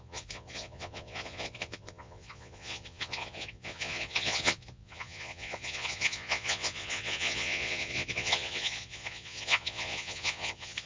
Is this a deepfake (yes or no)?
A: yes